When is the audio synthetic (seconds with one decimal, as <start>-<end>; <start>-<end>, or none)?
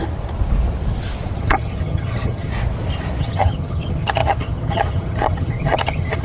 1.4-2.5; 3.2-6.2